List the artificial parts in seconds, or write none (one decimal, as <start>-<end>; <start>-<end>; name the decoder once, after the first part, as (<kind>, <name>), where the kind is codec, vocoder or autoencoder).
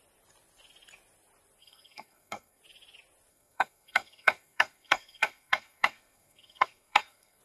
1.6-2.6 (codec, SNAC); 3.3-7.4